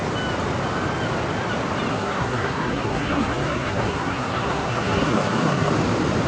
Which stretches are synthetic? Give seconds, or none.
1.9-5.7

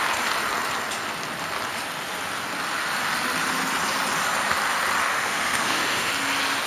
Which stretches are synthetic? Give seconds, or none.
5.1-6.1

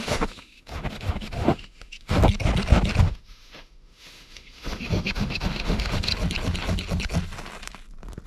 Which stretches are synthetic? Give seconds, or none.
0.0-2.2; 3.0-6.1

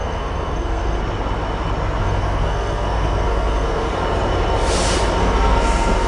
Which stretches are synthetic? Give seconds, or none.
0.0-1.0; 2.0-3.9; 5.2-6.1